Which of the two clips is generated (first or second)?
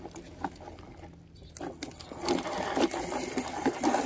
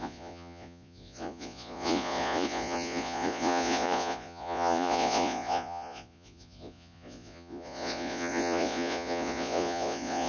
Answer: second